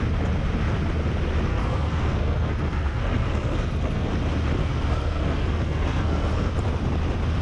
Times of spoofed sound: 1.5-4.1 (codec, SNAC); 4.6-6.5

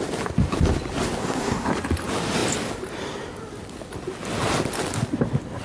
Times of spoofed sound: 1.2-1.7 (codec, SNAC)

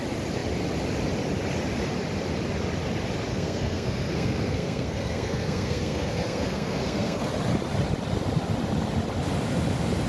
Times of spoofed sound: 3.3-7.3 (codec, SNAC)